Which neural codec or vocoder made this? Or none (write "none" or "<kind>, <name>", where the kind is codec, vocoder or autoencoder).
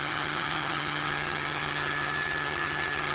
vocoder, HiFi-GAN